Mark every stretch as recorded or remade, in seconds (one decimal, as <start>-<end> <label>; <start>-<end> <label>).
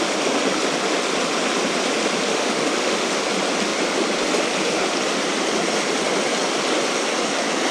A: 0.0-2.3 recorded; 2.3-3.2 remade; 3.2-7.7 recorded